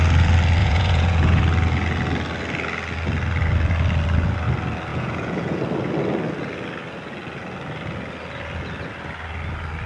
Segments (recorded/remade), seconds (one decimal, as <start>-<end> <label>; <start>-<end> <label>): 0.0-0.6 recorded; 0.6-1.4 remade; 1.4-4.9 recorded; 4.9-5.6 remade; 5.6-9.9 recorded